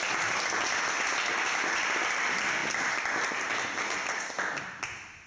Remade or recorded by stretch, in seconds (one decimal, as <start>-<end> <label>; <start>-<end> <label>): 0.0-5.3 recorded